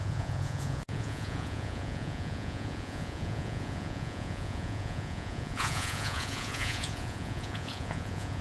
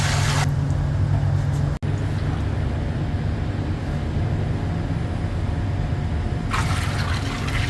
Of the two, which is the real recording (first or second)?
second